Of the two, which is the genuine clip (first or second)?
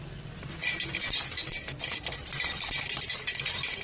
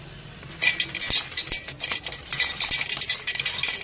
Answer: second